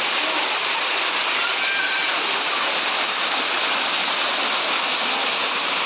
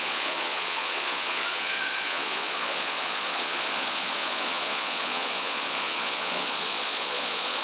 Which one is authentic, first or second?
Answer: first